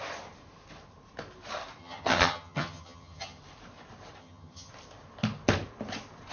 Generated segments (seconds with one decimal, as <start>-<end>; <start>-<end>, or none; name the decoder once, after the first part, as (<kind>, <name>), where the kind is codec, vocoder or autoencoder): 1.8-3.4 (vocoder, HiFi-GAN); 4.2-4.7